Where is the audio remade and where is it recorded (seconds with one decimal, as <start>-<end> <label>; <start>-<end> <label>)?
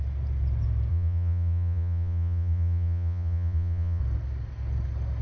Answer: 0.0-0.9 recorded; 0.9-4.0 remade; 4.0-5.2 recorded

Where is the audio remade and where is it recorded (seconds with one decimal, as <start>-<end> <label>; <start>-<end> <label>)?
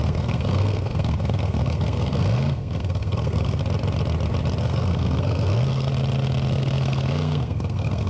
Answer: 0.0-3.6 remade; 3.6-4.6 recorded; 4.6-5.9 remade; 5.9-6.5 recorded; 6.5-8.1 remade